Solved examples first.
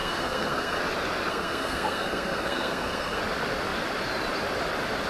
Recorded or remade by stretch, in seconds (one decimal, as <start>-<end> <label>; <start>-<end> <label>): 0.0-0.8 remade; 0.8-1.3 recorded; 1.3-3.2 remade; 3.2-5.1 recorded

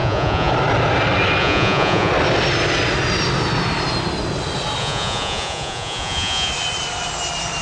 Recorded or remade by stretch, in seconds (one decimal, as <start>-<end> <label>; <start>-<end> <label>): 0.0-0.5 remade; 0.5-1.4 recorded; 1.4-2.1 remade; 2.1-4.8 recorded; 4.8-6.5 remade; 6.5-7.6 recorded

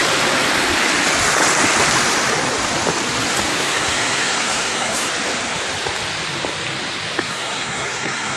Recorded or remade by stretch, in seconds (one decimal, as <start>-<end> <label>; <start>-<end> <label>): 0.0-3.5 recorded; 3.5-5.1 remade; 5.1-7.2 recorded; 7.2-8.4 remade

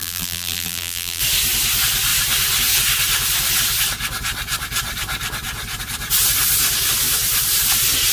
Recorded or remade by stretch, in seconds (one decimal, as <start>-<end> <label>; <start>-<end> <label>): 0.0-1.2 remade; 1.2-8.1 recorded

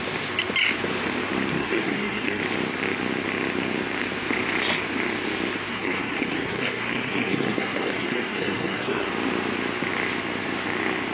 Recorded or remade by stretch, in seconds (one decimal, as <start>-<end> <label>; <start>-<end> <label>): 0.0-1.6 recorded; 1.6-2.4 remade; 2.4-5.7 recorded; 5.7-9.1 remade; 9.1-11.1 recorded

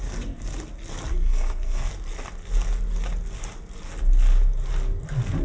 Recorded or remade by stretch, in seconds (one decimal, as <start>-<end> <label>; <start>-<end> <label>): 0.0-1.1 recorded; 1.1-1.9 remade; 1.9-5.4 recorded